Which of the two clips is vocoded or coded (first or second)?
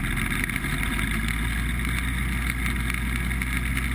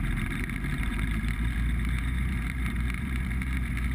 second